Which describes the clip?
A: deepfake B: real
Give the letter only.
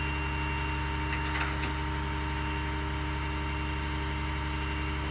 B